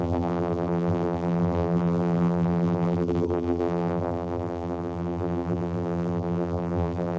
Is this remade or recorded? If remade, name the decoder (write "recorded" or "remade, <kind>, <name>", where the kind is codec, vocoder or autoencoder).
remade, vocoder, BigVGAN v2